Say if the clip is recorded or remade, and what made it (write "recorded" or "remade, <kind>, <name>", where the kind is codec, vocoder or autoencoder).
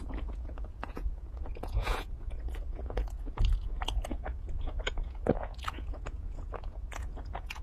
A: remade, vocoder, Vocos